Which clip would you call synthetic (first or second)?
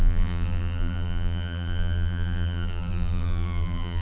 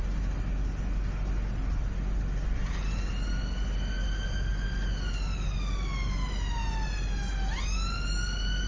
first